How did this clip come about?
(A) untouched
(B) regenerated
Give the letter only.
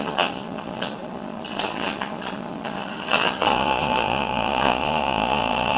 B